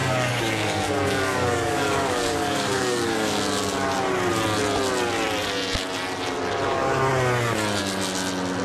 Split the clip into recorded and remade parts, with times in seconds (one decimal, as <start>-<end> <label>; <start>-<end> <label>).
0.0-3.4 remade; 3.4-8.6 recorded